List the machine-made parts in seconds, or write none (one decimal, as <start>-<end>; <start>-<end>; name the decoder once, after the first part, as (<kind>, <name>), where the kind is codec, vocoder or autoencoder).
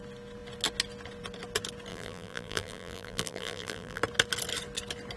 1.9-4.0 (vocoder, BigVGAN v2)